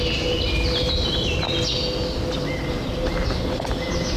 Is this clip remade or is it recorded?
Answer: recorded